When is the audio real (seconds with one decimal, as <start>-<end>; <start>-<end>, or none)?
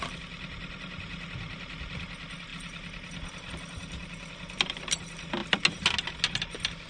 0.0-6.9